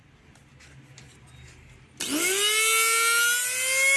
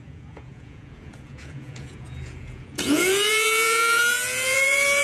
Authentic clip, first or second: first